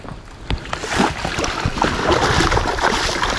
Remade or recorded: recorded